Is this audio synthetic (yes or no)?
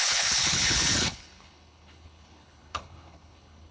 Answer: yes